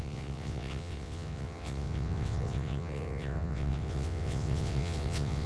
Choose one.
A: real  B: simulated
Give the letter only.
B